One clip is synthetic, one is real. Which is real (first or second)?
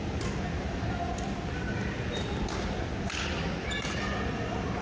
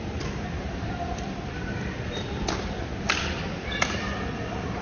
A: first